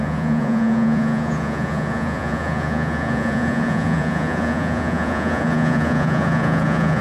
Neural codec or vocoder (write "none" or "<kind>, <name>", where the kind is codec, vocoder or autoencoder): vocoder, Vocos